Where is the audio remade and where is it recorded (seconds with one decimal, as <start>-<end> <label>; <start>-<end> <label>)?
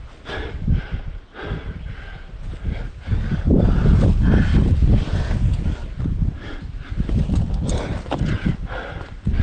0.0-9.4 recorded